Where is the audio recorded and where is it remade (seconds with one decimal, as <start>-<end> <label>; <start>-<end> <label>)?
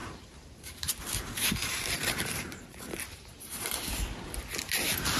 0.0-1.0 remade; 1.0-1.6 recorded; 1.6-3.8 remade; 3.8-5.2 recorded